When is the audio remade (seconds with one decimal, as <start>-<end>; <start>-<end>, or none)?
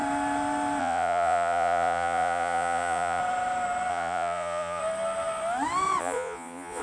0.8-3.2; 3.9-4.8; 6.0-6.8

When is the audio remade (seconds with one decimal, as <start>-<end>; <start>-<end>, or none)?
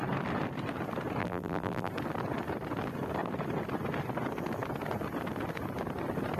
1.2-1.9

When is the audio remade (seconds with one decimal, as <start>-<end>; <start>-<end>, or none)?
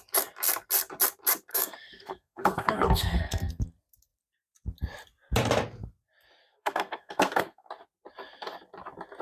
1.5-3.5; 6.4-7.7